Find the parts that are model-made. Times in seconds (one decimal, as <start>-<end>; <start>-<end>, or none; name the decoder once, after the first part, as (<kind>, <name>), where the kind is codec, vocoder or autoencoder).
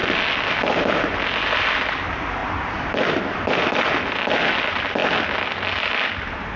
none